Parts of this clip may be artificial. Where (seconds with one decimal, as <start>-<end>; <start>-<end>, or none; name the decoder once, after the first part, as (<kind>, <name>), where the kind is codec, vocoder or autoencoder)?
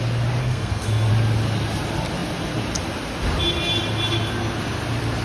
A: 0.4-1.1 (codec, SNAC)